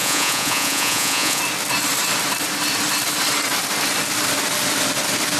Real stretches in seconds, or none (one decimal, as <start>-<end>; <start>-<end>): 1.4-5.4

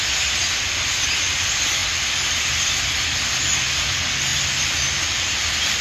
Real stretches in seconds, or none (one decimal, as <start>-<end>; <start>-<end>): 0.0-1.8; 3.4-4.3

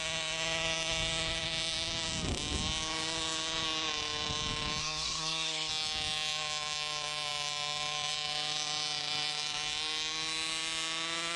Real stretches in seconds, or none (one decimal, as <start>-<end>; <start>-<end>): 0.0-4.8; 5.7-11.4